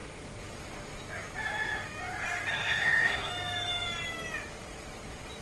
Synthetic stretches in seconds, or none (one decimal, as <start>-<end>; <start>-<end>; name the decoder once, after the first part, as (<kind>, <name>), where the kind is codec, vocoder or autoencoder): 2.5-3.3 (codec, SNAC)